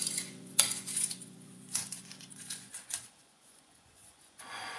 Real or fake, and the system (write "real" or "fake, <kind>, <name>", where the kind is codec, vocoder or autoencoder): fake, vocoder, Vocos